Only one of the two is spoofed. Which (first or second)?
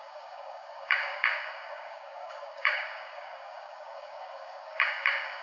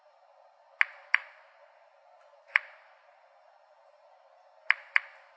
first